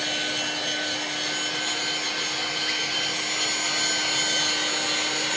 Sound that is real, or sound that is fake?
real